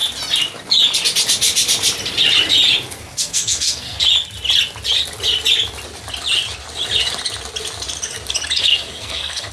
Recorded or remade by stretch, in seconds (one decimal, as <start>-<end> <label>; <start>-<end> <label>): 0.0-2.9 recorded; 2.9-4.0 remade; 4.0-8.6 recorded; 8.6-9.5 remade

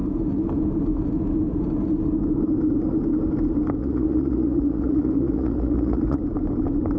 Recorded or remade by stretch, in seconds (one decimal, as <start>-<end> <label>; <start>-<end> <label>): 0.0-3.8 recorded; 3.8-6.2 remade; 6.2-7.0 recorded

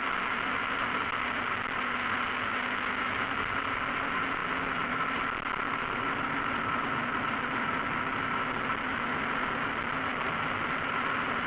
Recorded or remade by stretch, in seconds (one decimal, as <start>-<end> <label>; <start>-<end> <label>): 0.0-11.5 recorded